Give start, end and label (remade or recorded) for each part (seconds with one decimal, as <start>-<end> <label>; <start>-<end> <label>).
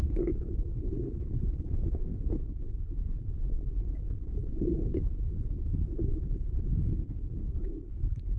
0.0-8.4 remade